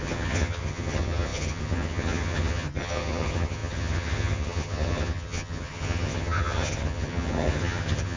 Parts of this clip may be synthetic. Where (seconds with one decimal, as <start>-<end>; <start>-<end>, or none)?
0.0-8.2